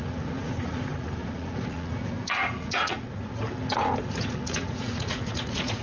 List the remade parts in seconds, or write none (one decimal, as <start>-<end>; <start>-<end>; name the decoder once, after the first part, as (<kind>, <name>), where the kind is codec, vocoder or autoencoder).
0.0-3.3 (vocoder, Vocos); 4.0-5.8